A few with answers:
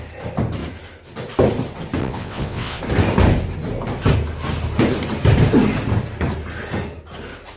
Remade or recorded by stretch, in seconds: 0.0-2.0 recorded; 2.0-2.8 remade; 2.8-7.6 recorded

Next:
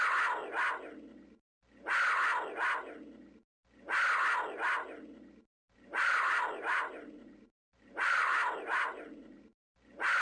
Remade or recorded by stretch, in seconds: 0.0-5.5 recorded; 5.5-9.4 remade; 9.4-10.2 recorded

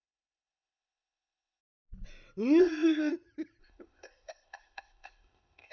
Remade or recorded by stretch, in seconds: 0.0-1.6 remade; 1.6-2.6 recorded; 2.6-3.1 remade; 3.1-3.6 recorded; 3.6-5.7 remade

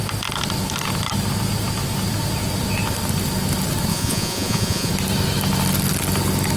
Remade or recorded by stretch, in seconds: 0.0-3.9 recorded; 3.9-4.9 remade; 4.9-6.6 recorded

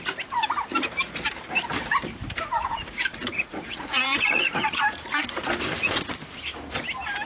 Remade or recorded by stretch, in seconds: 0.0-2.2 recorded; 2.2-5.9 remade; 5.9-7.3 recorded

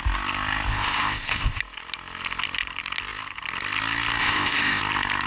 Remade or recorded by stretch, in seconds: 0.0-0.7 recorded; 0.7-1.6 remade; 1.6-4.2 recorded; 4.2-4.8 remade; 4.8-5.3 recorded

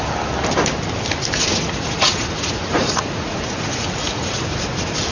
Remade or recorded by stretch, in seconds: 0.0-1.5 recorded; 1.5-4.6 remade; 4.6-5.1 recorded

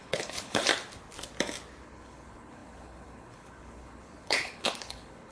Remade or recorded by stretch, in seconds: 0.0-0.7 remade; 0.7-1.8 recorded; 1.8-5.3 remade